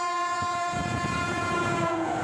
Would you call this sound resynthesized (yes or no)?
yes